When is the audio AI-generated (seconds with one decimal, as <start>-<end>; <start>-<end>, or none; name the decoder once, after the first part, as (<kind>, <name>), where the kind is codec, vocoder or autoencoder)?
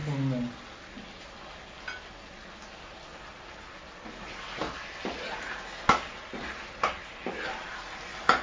none